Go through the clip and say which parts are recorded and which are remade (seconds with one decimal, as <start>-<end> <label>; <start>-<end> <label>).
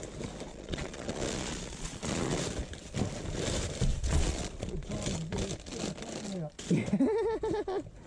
0.0-0.5 recorded; 0.5-2.4 remade; 2.4-3.9 recorded; 3.9-4.9 remade; 4.9-8.1 recorded